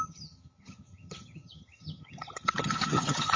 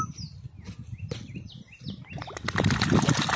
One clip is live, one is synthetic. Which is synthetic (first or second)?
first